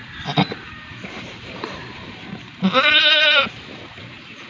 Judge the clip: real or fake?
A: fake